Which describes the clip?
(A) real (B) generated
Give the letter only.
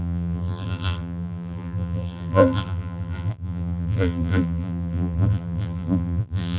B